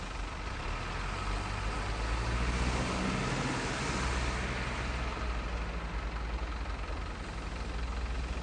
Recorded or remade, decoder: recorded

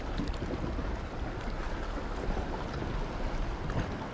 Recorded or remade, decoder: recorded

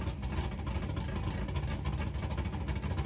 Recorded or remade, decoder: recorded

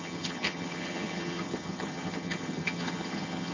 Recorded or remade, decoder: remade, vocoder, HiFi-GAN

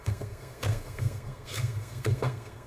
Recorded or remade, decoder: remade, codec, SNAC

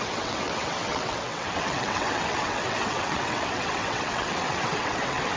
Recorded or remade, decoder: remade, vocoder, WaveNeXt